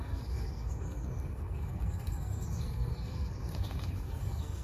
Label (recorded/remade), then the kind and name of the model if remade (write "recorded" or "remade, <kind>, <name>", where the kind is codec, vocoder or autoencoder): remade, codec, SNAC